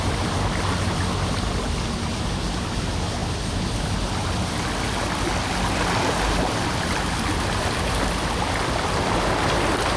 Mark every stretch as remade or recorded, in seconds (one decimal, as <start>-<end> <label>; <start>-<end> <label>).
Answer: 0.0-10.0 recorded